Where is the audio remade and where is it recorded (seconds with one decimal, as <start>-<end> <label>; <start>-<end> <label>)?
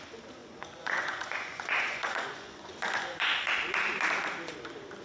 0.0-0.4 recorded; 0.4-3.4 remade; 3.4-5.0 recorded